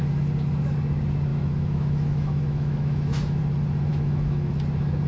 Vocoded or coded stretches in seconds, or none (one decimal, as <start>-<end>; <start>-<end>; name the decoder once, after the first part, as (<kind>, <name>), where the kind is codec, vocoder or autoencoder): 1.3-3.4 (autoencoder, DAC-VAE); 3.9-4.5